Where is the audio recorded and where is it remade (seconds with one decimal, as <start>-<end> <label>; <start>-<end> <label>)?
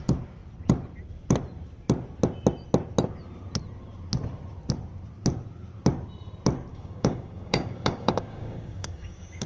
0.0-6.7 recorded; 6.7-9.5 remade